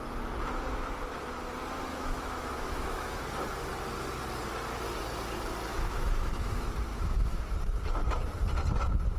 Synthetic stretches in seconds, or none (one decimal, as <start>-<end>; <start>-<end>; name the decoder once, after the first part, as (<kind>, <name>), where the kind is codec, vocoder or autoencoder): 1.9-3.2 (autoencoder, DAC-VAE); 5.7-6.5; 6.9-7.4